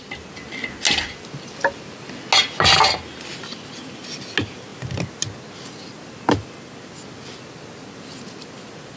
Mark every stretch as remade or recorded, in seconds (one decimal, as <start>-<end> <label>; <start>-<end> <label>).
0.0-9.0 recorded